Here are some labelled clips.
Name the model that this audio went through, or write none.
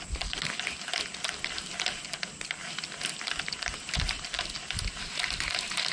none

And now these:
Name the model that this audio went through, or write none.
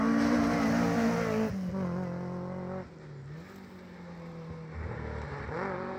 none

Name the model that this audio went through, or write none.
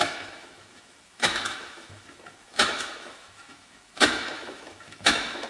autoencoder, DAC-VAE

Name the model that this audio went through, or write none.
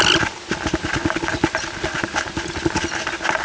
none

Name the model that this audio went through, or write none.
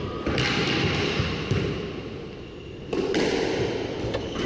none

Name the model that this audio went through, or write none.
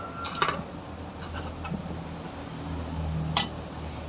none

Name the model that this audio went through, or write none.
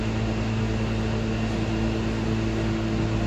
none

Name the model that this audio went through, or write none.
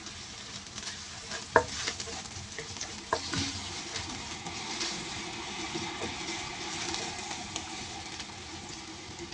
none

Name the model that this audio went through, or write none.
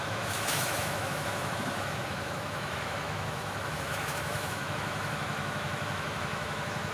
autoencoder, DAC-VAE